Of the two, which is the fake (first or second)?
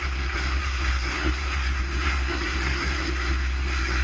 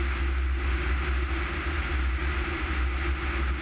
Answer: first